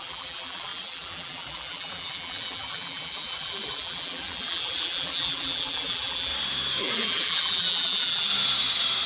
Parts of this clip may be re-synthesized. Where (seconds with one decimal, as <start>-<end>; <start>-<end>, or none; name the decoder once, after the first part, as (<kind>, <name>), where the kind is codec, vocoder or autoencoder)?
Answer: 0.0-6.3 (vocoder, BigVGAN v2); 6.8-8.3